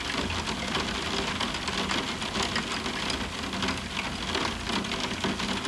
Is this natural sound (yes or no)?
yes